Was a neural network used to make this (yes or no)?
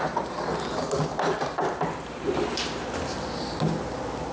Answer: no